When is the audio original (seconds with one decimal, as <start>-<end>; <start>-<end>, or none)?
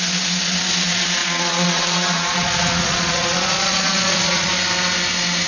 0.0-1.2; 4.5-5.5